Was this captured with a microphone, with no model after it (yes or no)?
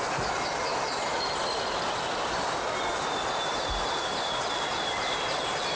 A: yes